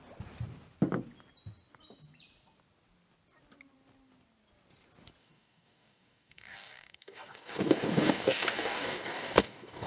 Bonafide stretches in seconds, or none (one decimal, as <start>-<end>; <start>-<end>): 0.0-5.2